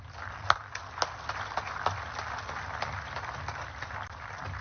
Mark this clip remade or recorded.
recorded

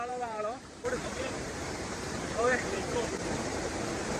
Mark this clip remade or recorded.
remade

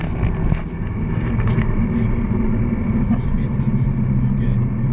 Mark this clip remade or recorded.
remade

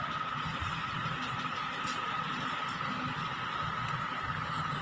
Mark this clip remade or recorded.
recorded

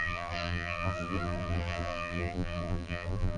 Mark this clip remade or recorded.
remade